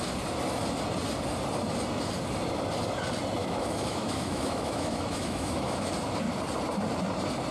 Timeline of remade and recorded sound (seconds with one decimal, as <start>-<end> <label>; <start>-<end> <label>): 0.0-3.4 recorded; 3.4-5.9 remade; 5.9-7.5 recorded